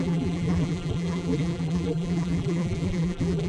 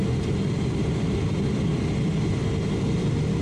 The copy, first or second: first